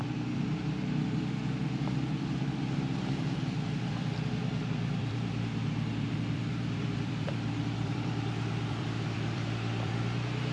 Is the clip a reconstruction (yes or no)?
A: yes